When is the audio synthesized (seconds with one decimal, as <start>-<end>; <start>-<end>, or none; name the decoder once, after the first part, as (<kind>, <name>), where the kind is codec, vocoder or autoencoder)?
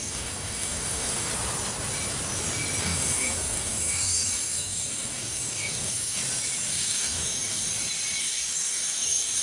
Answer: 0.0-1.3 (codec, DAC); 2.8-6.2; 6.7-7.7; 8.2-9.4